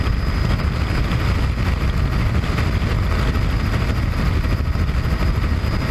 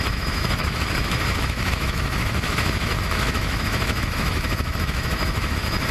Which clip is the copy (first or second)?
second